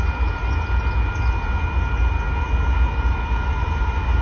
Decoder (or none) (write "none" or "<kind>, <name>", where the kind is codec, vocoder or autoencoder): none